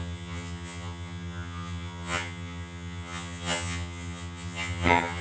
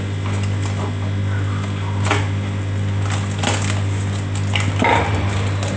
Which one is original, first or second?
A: second